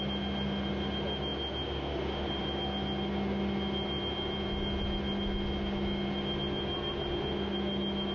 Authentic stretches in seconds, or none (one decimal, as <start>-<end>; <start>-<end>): 0.0-8.1